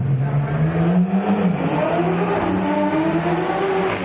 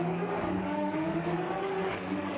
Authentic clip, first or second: first